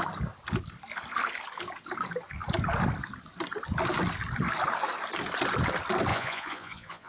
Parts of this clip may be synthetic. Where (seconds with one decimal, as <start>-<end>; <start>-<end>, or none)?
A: 6.1-7.1